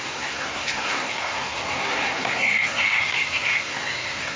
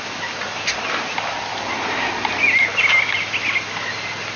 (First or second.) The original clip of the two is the second